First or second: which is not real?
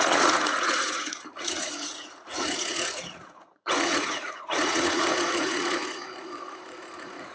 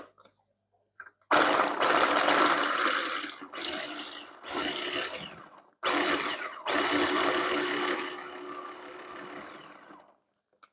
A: first